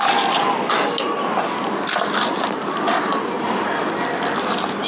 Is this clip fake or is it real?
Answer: real